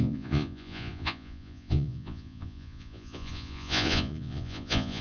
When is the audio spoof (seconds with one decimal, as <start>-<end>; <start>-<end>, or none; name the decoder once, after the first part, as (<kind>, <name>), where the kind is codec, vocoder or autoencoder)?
0.0-5.0 (vocoder, Vocos)